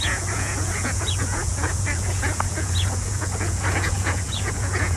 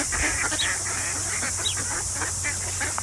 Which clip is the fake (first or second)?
first